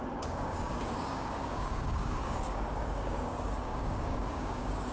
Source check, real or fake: fake